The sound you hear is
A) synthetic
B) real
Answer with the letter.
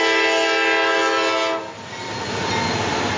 B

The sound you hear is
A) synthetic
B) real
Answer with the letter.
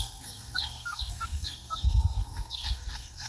A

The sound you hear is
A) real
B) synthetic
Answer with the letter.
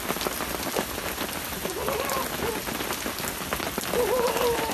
A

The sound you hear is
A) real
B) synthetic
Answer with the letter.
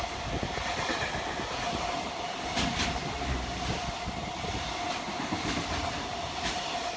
A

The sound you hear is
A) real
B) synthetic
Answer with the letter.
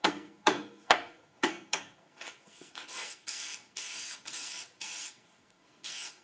B